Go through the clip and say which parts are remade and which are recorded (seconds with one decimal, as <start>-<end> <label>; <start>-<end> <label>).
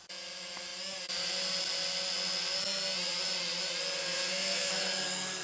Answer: 0.0-4.0 recorded; 4.0-4.7 remade; 4.7-5.4 recorded